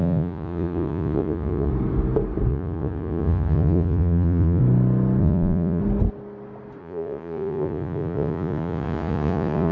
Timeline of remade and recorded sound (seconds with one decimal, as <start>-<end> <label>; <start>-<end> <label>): 0.0-1.7 remade; 1.7-2.5 recorded; 2.5-4.6 remade; 4.6-5.2 recorded; 5.2-5.8 remade; 5.8-6.8 recorded; 6.8-9.7 remade